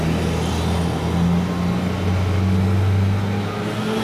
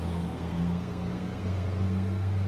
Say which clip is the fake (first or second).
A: second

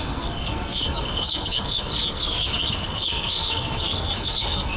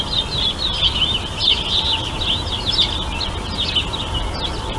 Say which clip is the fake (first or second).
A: first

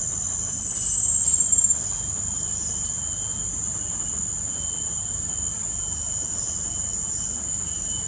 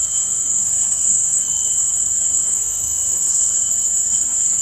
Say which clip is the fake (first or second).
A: second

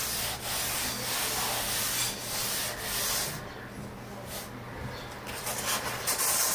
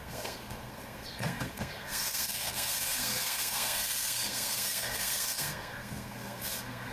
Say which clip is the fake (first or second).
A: second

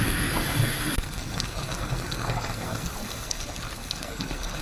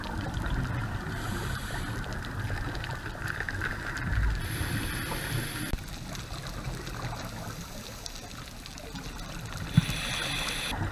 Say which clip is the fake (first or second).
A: first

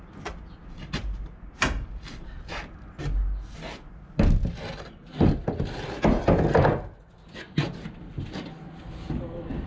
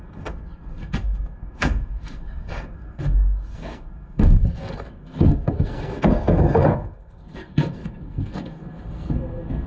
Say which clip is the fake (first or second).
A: second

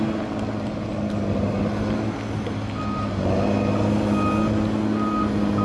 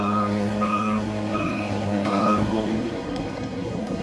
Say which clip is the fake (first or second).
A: second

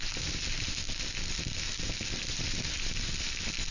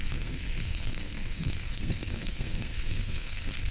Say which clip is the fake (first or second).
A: second